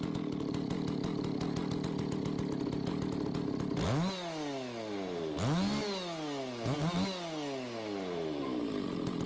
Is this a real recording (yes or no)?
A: yes